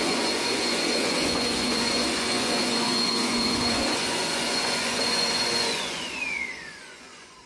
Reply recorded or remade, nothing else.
remade